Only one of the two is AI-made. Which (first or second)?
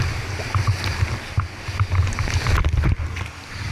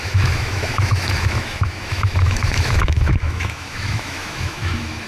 second